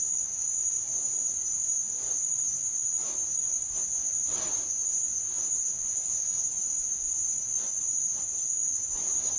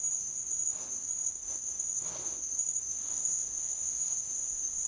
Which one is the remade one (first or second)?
second